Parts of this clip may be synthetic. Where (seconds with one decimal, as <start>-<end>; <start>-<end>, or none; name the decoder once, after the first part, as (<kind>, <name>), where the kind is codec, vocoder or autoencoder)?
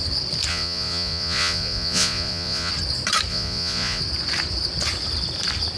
0.5-2.7 (vocoder, Vocos); 3.3-4.0